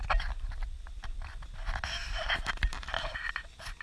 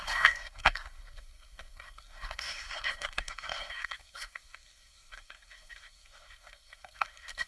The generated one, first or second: second